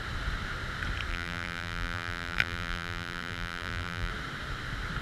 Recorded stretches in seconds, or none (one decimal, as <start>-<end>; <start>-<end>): 0.0-1.1; 4.1-5.0